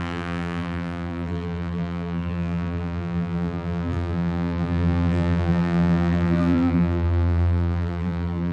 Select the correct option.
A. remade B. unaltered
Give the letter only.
A